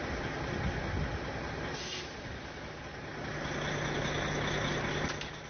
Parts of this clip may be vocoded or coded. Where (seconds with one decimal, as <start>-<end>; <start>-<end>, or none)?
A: none